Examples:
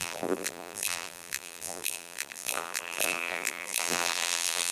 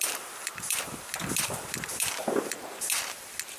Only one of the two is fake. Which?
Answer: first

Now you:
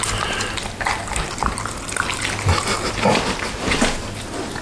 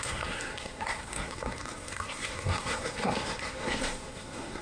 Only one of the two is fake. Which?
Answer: second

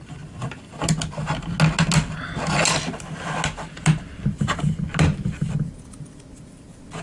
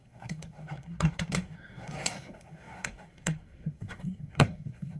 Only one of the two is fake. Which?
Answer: second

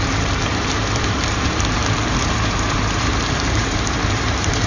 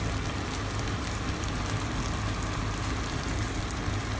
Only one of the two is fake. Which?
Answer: first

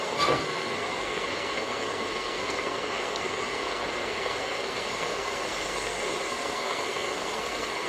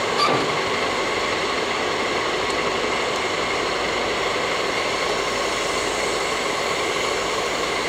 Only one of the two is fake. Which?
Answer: first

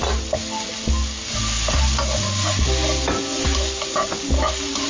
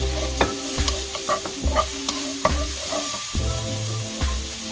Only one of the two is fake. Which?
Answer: second